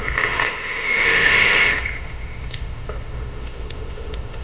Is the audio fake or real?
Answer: fake